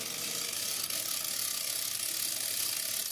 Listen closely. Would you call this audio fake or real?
real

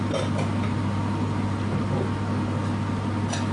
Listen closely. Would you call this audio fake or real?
real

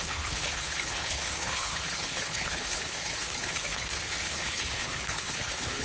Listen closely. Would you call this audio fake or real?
fake